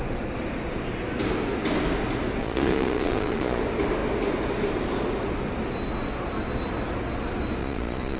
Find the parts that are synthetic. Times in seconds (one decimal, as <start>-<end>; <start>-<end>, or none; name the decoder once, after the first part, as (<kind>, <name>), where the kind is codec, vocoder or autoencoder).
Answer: 2.4-3.6 (vocoder, Vocos); 7.6-8.2